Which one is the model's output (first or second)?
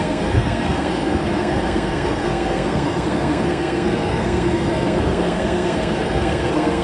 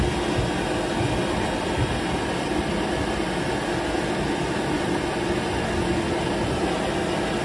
first